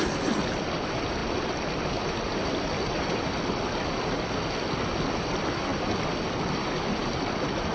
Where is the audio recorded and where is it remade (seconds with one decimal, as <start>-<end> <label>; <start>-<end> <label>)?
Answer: 0.0-7.7 recorded